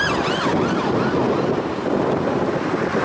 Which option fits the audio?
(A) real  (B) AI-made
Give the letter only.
A